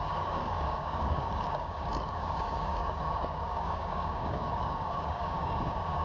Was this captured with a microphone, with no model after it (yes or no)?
no